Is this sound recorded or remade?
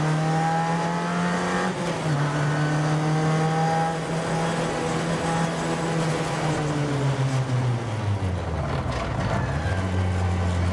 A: recorded